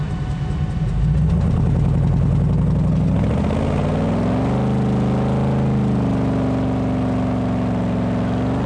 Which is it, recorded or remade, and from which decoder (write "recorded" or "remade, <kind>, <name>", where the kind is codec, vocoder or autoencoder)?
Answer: recorded